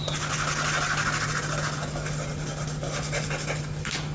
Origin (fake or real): real